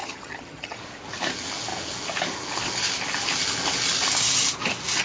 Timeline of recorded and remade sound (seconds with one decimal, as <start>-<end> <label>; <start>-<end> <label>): 0.0-0.8 remade; 0.8-5.0 recorded